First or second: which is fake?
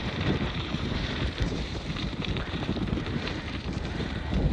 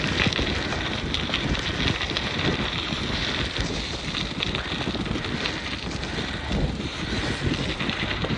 first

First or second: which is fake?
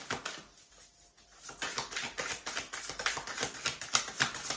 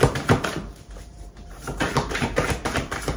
second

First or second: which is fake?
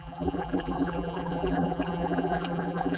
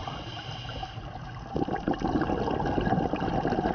first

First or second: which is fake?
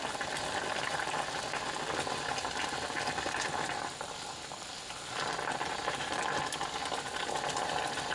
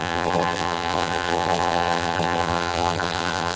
second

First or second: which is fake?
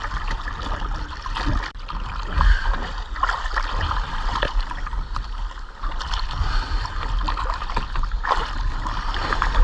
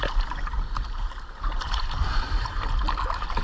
second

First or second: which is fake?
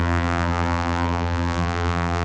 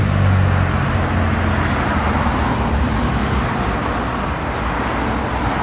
first